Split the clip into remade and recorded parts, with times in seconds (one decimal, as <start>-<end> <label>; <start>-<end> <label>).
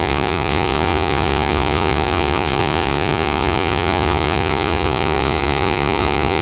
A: 0.0-6.4 remade